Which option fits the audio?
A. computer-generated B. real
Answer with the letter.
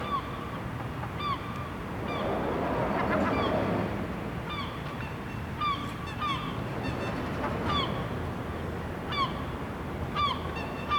B